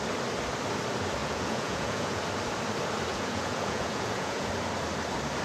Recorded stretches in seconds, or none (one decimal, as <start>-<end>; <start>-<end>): 0.0-1.2; 2.2-3.1; 4.5-5.4